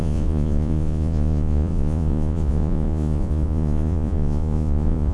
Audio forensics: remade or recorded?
remade